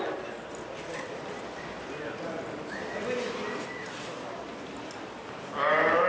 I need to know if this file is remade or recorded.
recorded